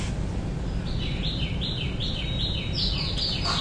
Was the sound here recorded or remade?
recorded